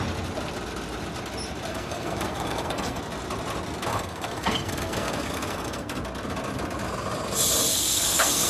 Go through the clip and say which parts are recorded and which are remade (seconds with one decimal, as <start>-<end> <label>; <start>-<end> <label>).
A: 0.0-1.7 recorded; 1.7-3.0 remade; 3.0-3.9 recorded; 3.9-6.0 remade; 6.0-7.7 recorded; 7.7-8.5 remade